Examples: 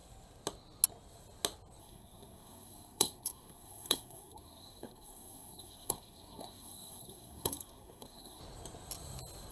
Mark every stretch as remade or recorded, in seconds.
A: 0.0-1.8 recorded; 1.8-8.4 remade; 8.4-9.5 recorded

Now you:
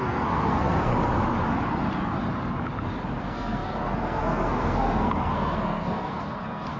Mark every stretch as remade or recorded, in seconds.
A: 0.0-0.9 remade; 0.9-3.2 recorded; 3.2-6.8 remade